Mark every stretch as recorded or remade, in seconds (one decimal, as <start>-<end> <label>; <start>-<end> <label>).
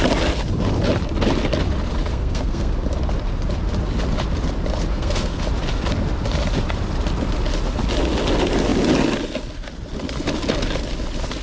0.0-2.1 recorded; 2.1-2.7 remade; 2.7-4.9 recorded; 4.9-5.4 remade; 5.4-11.4 recorded